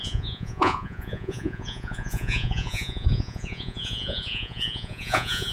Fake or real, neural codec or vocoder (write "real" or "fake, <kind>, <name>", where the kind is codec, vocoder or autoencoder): fake, vocoder, Vocos